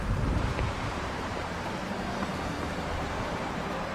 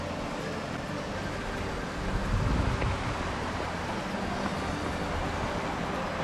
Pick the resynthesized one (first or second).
first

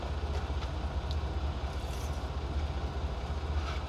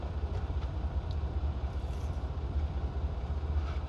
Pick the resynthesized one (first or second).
second